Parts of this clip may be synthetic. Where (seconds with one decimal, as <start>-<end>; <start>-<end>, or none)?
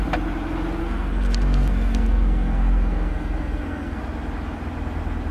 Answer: 0.8-4.0